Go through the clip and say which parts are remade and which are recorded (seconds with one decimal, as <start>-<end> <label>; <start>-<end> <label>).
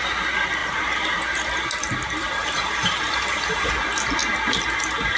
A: 0.0-0.6 recorded; 0.6-3.7 remade; 3.7-5.2 recorded